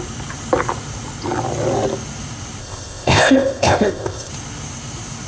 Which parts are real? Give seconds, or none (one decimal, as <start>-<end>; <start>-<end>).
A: 0.0-2.6; 4.3-5.3